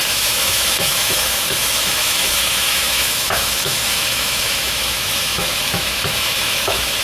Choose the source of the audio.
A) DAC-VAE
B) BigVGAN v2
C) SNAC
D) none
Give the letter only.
A